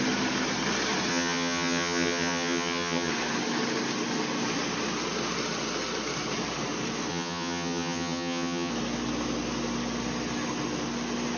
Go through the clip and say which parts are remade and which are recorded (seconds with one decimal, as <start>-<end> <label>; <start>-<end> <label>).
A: 0.0-1.1 recorded; 1.1-3.1 remade; 3.1-7.1 recorded; 7.1-8.7 remade; 8.7-11.4 recorded